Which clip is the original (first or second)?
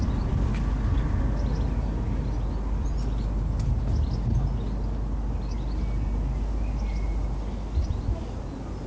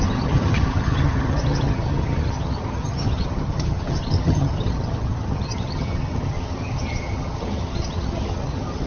first